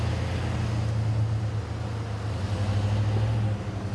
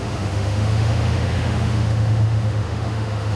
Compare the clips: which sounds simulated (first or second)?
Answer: second